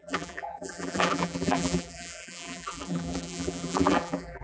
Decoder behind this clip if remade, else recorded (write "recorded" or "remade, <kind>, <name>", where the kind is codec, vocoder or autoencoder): remade, vocoder, BigVGAN v2